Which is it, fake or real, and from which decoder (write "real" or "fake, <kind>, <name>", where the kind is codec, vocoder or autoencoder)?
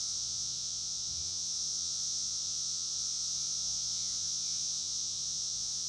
fake, vocoder, Vocos